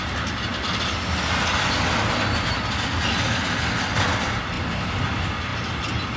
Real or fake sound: real